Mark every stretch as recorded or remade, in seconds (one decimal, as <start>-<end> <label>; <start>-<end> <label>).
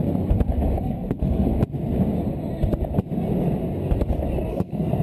0.0-0.8 recorded; 0.8-1.5 remade; 1.5-4.5 recorded; 4.5-5.0 remade